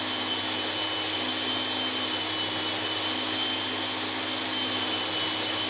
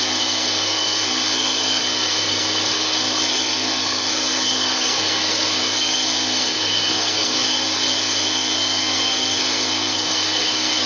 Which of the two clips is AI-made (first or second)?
second